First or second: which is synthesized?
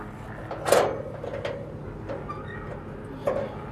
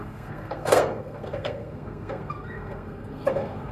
second